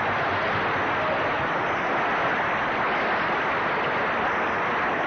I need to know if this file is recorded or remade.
recorded